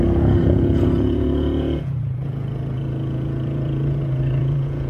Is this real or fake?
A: fake